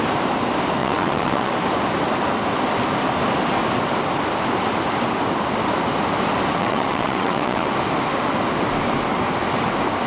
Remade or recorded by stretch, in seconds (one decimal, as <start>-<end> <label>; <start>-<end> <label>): 0.0-0.8 recorded; 0.8-1.5 remade; 1.5-6.6 recorded; 6.6-7.7 remade; 7.7-10.1 recorded